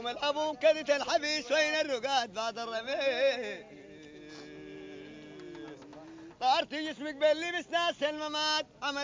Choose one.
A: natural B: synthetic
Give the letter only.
A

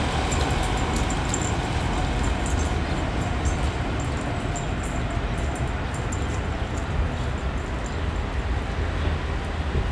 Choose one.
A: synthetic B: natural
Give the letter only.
B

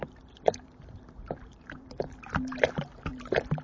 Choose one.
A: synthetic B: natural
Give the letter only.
A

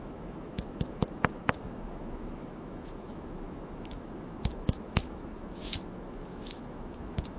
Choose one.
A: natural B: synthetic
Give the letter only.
B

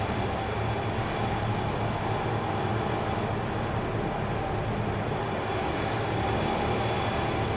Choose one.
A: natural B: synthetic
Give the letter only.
A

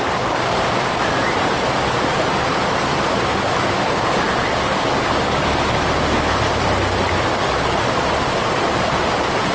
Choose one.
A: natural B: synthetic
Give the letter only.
A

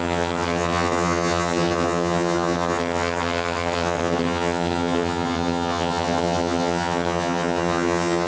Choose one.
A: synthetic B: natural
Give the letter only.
A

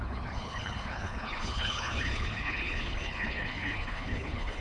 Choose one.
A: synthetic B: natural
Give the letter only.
A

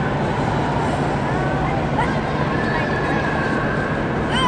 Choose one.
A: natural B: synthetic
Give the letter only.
A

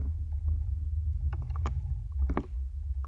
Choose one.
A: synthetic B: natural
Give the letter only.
B